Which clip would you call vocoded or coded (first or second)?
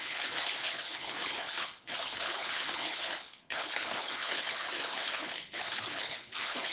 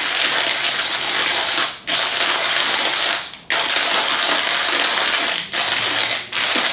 first